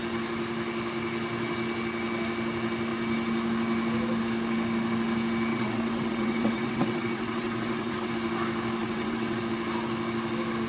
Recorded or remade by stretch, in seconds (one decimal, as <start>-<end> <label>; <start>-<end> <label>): 0.0-5.5 recorded; 5.5-8.1 remade; 8.1-8.8 recorded; 8.8-9.4 remade; 9.4-10.7 recorded